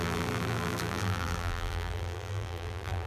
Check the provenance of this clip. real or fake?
fake